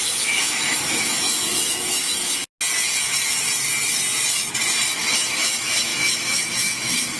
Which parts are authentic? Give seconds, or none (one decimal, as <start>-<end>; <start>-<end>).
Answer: 2.4-5.0